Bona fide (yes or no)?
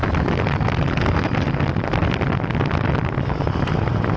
yes